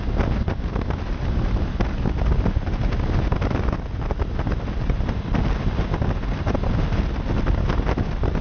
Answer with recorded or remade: recorded